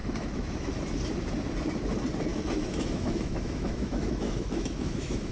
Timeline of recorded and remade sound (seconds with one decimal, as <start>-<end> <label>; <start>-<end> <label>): 0.0-0.7 remade; 0.7-2.3 recorded; 2.3-5.3 remade